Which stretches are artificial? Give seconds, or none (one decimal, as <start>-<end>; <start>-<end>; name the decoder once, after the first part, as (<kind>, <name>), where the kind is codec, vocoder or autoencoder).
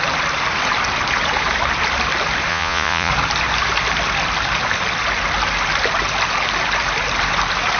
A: 2.5-3.1 (vocoder, Vocos)